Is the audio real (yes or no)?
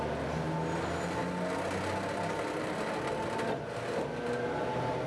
yes